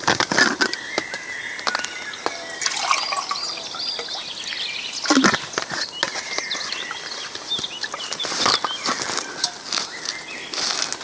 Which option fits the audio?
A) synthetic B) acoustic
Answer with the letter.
B